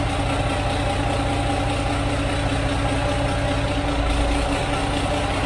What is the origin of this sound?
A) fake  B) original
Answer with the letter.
B